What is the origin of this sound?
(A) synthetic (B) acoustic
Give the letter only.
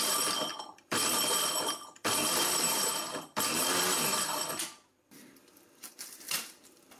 A